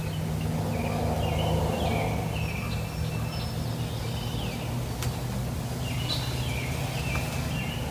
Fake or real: real